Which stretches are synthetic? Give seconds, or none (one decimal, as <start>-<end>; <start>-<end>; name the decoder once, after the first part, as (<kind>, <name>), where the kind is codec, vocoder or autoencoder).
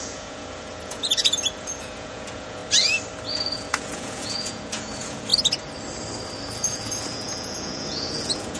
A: 0.0-2.6 (vocoder, Vocos); 3.3-5.3; 6.4-8.6